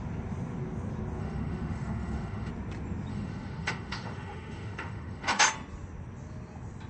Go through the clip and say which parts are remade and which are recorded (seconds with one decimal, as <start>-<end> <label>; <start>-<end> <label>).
0.0-1.2 recorded; 1.2-2.5 remade; 2.5-3.1 recorded; 3.1-5.5 remade; 5.5-6.9 recorded